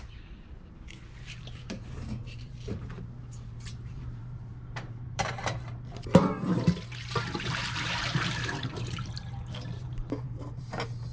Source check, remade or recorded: remade